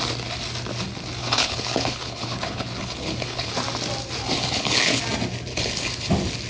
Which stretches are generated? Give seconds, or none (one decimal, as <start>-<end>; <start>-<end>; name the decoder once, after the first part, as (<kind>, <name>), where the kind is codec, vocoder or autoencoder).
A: 1.2-3.5 (codec, HILCodec); 4.2-5.0; 5.5-6.1

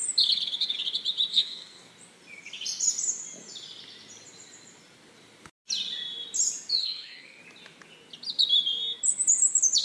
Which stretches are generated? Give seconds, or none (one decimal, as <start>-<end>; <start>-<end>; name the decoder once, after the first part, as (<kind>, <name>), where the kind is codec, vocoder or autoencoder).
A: 1.3-1.9 (codec, SNAC); 6.8-7.4

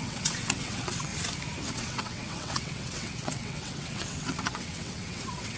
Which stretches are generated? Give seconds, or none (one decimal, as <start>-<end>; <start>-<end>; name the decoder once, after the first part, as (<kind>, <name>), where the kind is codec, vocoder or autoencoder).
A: 0.0-1.1 (vocoder, WaveNeXt); 1.7-5.6

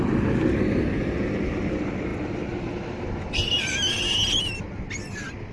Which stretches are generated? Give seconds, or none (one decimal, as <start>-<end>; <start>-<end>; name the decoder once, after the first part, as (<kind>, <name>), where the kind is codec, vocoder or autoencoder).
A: none

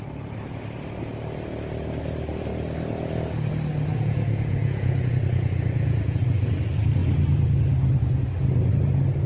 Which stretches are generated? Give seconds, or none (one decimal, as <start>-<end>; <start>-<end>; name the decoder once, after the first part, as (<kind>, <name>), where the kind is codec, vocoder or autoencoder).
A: 3.9-6.2 (vocoder, Vocos)